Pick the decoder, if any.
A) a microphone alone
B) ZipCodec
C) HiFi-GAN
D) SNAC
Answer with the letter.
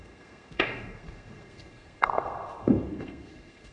D